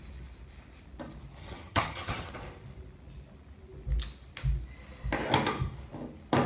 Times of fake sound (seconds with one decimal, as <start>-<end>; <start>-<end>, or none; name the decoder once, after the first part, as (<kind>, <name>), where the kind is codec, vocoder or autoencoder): 1.4-2.3 (vocoder, HiFi-GAN)

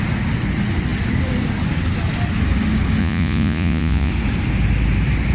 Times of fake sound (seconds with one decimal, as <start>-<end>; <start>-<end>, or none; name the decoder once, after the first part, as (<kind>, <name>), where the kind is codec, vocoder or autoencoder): 3.0-4.1 (vocoder, Vocos)

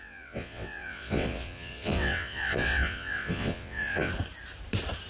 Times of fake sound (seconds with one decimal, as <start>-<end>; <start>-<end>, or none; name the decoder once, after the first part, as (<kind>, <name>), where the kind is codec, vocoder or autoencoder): 0.0-4.1 (vocoder, WaveNeXt)

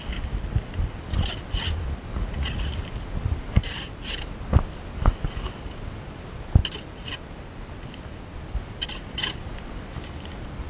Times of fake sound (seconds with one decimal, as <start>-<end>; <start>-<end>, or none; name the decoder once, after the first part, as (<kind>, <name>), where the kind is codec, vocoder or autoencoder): 2.1-2.7 (vocoder, Vocos)

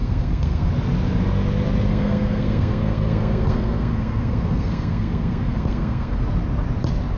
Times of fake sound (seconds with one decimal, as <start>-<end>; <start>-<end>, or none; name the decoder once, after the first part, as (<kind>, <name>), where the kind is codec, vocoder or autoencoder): 0.0-0.7 (codec, SNAC); 1.9-6.2

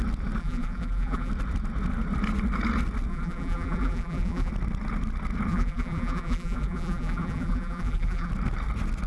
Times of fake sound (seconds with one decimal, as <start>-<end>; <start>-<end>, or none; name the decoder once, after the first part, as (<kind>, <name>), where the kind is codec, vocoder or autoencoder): 0.4-1.3 (vocoder, BigVGAN v2); 3.1-4.5; 5.5-8.3